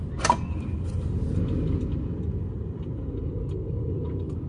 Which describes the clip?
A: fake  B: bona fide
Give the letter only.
B